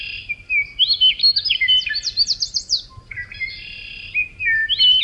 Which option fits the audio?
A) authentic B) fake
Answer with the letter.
A